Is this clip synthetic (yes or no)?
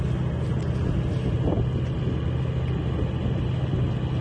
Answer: no